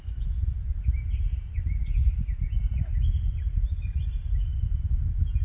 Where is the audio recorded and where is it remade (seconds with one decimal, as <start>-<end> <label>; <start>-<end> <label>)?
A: 0.0-0.7 remade; 0.7-3.9 recorded; 3.9-5.4 remade

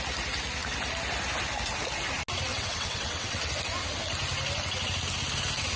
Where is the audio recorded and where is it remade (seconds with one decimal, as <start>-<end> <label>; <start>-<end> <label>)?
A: 0.0-2.5 recorded; 2.5-3.5 remade; 3.5-5.8 recorded

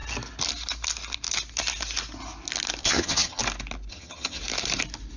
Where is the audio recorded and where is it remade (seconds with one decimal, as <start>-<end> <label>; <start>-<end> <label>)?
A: 0.0-2.8 recorded; 2.8-3.4 remade; 3.4-3.9 recorded; 3.9-4.4 remade; 4.4-5.2 recorded